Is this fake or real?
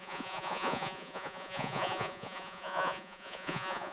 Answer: fake